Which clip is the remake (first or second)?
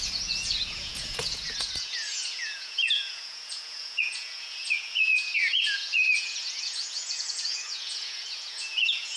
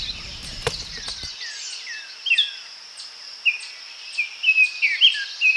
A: first